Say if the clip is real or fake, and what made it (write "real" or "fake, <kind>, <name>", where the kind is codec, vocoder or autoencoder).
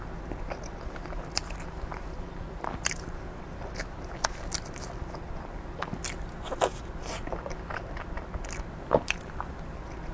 fake, vocoder, BigVGAN v2